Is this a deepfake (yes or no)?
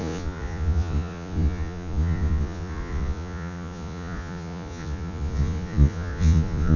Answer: yes